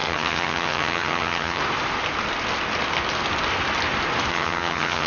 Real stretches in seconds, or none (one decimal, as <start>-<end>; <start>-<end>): 1.6-4.3